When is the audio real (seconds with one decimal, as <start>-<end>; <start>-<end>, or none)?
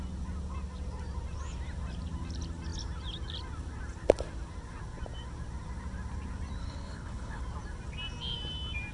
0.0-6.6; 7.4-8.9